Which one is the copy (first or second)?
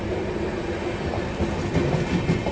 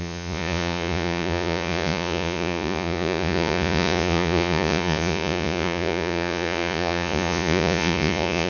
second